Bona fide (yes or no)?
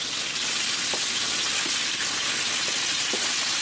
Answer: yes